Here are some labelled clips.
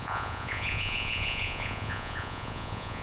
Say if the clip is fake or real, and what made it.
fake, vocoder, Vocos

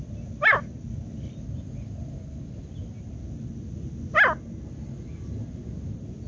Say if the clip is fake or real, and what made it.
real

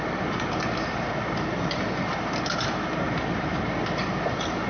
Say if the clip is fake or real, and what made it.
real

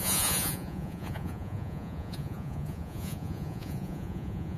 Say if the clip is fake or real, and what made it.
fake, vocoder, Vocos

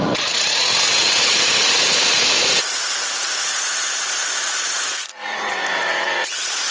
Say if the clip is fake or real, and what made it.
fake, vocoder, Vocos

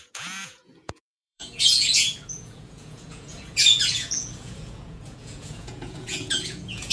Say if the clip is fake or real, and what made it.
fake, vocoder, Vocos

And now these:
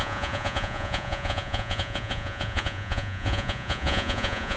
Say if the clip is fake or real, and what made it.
fake, vocoder, Vocos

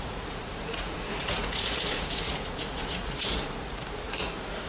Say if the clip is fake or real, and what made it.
fake, vocoder, Vocos